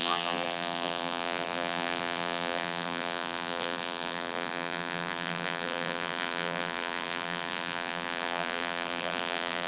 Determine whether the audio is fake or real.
fake